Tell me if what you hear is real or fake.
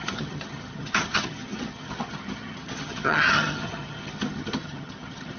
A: fake